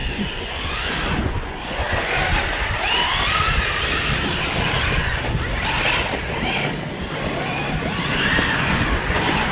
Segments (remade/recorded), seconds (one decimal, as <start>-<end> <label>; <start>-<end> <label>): 0.0-2.2 remade; 2.2-4.6 recorded; 4.6-5.1 remade; 5.1-8.3 recorded; 8.3-9.5 remade